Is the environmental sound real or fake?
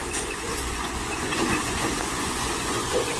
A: fake